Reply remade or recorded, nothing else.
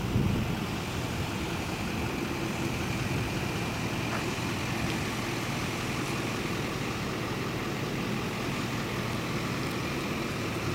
recorded